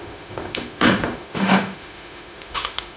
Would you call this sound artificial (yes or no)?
yes